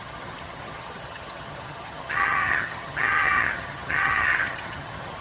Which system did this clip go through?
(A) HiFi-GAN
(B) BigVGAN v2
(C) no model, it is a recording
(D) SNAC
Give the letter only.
A